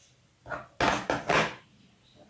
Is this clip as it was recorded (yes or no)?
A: yes